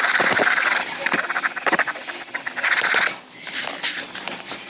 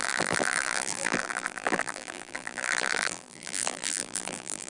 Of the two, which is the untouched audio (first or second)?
first